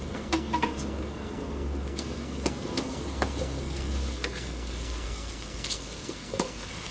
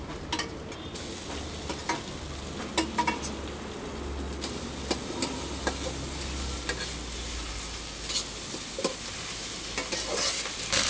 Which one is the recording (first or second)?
second